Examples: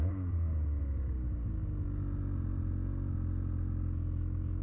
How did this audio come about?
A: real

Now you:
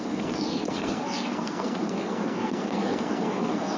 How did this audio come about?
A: fake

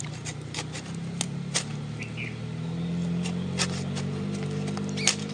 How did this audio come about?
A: real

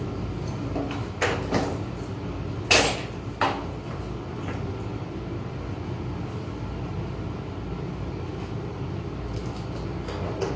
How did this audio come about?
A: real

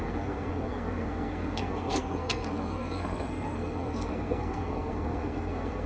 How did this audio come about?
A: fake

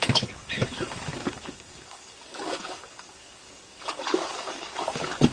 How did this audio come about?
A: fake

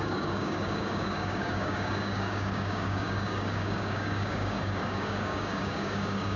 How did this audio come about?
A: fake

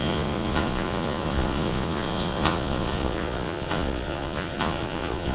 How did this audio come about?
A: fake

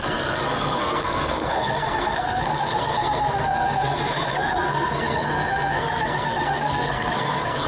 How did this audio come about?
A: fake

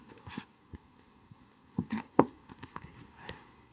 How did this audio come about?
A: fake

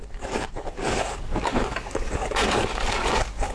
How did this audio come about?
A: fake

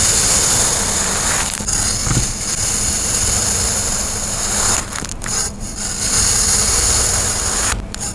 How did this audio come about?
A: fake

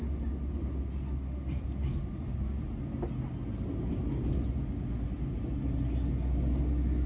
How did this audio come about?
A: real